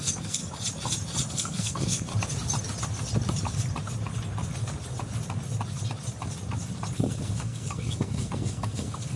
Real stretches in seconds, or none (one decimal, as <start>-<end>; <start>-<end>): 0.4-1.3; 2.1-6.9